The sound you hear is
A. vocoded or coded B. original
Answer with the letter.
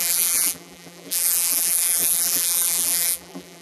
A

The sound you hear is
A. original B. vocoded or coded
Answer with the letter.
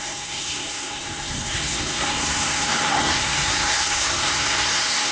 B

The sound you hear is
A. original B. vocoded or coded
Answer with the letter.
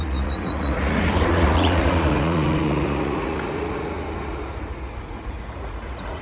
B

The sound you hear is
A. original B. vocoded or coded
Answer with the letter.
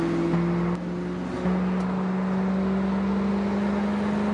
A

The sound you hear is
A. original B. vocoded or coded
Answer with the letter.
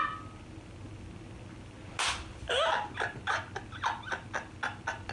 A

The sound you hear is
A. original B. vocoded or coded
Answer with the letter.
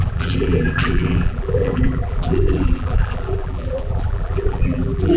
B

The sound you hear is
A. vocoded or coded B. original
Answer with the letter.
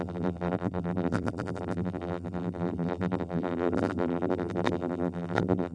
A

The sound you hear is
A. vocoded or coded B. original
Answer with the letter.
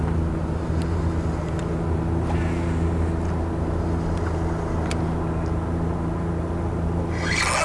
B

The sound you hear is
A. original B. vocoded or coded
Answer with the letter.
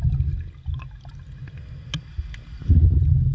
A